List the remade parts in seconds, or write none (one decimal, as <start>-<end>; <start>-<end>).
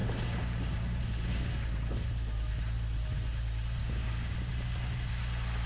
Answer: 3.8-4.5